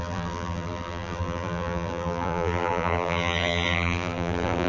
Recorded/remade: remade